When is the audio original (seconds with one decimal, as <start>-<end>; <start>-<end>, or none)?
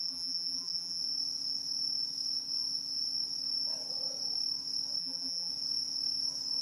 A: 1.0-5.0; 5.5-6.6